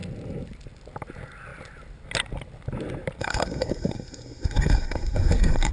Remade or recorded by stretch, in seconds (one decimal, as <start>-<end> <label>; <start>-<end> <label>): 0.0-3.2 recorded; 3.2-5.7 remade